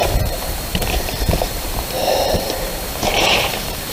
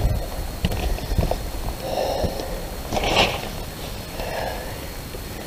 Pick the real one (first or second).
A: second